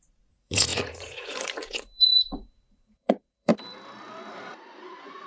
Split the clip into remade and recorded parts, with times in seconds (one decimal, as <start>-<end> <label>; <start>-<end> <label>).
0.0-3.5 remade; 3.5-4.3 recorded; 4.3-5.3 remade